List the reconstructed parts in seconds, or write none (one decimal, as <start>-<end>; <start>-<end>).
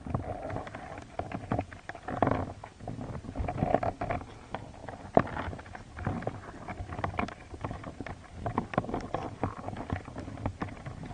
none